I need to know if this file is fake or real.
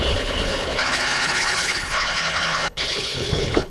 fake